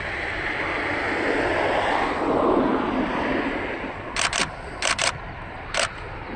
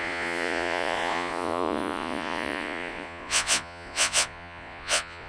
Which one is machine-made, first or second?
second